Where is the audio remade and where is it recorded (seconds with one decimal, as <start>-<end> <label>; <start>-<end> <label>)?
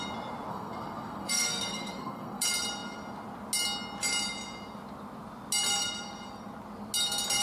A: 0.0-0.5 recorded; 0.5-2.4 remade; 2.4-7.4 recorded